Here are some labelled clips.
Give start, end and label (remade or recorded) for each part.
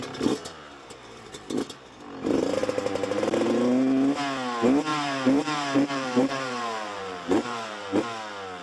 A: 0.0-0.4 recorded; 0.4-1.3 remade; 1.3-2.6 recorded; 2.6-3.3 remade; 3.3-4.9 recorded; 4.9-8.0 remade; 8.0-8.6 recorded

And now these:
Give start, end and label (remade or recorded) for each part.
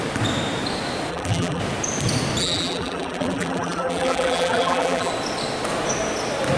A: 0.0-1.1 recorded; 1.1-1.6 remade; 1.6-2.4 recorded; 2.4-5.1 remade; 5.1-6.6 recorded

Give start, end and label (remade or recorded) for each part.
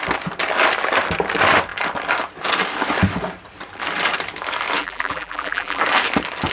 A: 0.0-4.8 recorded; 4.8-5.8 remade; 5.8-6.5 recorded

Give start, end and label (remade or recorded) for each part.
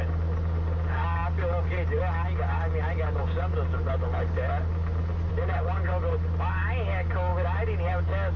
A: 0.0-8.4 recorded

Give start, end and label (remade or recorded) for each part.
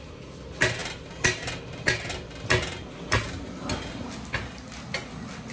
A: 0.0-5.5 recorded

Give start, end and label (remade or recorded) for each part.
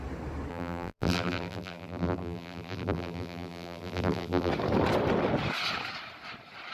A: 0.0-0.5 recorded; 0.5-4.5 remade; 4.5-6.7 recorded